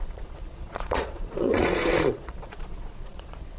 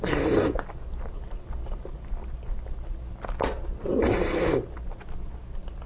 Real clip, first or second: second